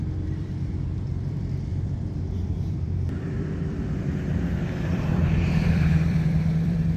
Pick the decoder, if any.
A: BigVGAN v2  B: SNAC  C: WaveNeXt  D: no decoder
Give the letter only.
A